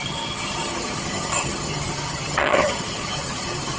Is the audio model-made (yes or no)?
yes